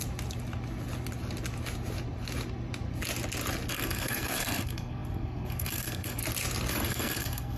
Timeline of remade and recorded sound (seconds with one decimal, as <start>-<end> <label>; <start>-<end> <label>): 0.0-3.7 recorded; 3.7-6.2 remade; 6.2-6.7 recorded; 6.7-7.6 remade